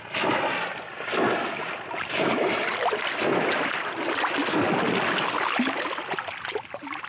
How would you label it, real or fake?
real